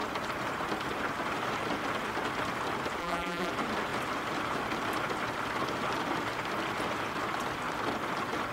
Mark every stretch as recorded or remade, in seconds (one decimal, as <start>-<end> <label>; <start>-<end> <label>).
0.0-3.0 recorded; 3.0-3.5 remade; 3.5-8.5 recorded